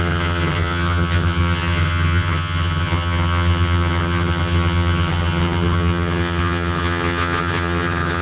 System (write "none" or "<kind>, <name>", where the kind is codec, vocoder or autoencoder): vocoder, HiFi-GAN